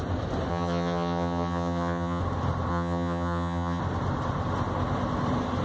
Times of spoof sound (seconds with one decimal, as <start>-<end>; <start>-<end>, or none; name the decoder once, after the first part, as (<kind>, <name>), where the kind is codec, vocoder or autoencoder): 0.5-2.2 (vocoder, HiFi-GAN); 2.7-3.8